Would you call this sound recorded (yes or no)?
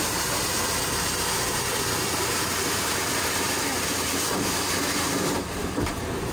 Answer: no